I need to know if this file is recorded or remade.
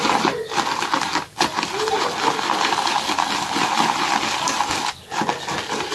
recorded